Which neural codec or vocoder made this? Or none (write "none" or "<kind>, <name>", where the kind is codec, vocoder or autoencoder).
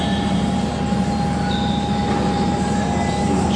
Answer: none